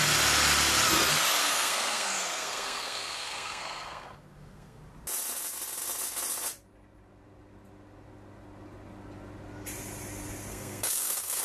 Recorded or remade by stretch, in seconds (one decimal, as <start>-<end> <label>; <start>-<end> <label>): 0.0-1.4 recorded; 1.4-4.8 remade; 4.8-10.5 recorded; 10.5-11.4 remade